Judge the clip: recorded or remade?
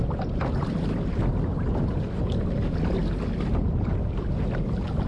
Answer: recorded